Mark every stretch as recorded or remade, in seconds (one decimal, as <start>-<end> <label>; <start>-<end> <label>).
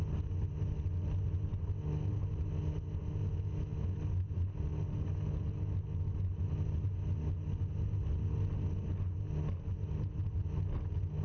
0.0-11.2 recorded